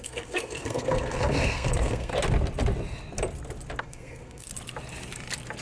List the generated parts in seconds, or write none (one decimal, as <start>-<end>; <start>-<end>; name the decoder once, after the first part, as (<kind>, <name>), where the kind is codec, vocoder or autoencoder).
0.0-2.1 (codec, SNAC); 3.8-4.5